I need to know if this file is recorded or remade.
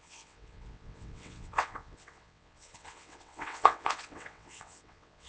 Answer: remade